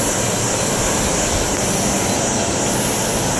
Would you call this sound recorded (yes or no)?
yes